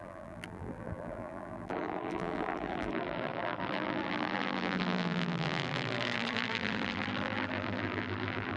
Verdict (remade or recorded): remade